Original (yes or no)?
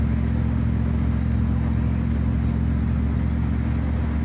yes